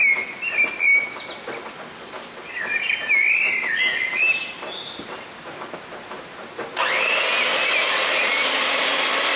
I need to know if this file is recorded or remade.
recorded